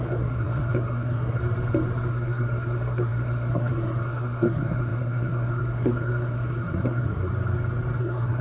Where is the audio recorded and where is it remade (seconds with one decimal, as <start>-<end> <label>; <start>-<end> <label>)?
0.0-1.4 remade; 1.4-2.1 recorded; 2.1-7.3 remade; 7.3-8.0 recorded; 8.0-8.4 remade